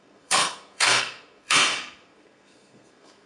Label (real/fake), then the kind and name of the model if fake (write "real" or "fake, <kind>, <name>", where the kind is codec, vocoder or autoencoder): fake, codec, SNAC